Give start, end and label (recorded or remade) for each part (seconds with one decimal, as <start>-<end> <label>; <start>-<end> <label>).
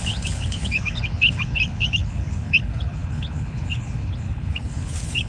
0.0-5.3 remade